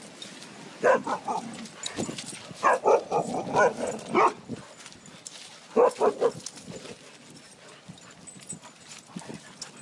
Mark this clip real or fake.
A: real